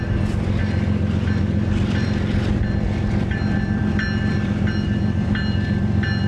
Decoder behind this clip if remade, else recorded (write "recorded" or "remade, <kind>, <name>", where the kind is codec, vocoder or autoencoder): recorded